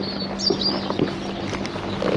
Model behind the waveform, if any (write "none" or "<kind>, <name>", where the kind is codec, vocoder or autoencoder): none